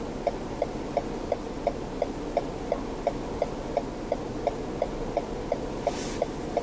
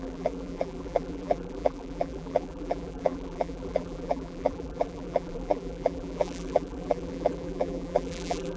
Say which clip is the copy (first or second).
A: second